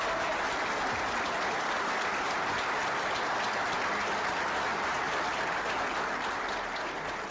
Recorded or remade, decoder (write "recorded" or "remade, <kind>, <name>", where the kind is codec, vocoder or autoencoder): recorded